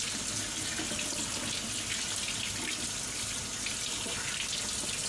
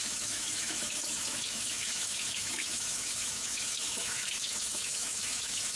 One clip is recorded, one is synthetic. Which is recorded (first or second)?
first